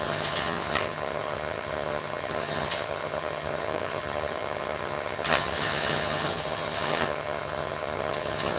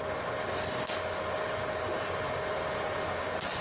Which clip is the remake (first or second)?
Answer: first